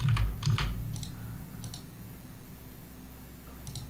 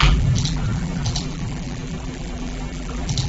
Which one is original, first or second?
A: first